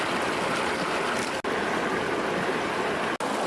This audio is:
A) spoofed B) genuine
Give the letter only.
B